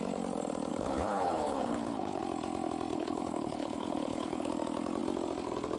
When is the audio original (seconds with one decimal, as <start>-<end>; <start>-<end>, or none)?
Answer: 0.0-0.7; 2.2-2.9; 4.5-5.8